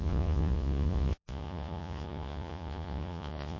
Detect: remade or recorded remade